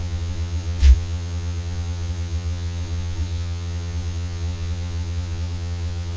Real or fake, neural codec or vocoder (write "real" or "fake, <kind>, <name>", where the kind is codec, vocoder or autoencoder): fake, vocoder, Vocos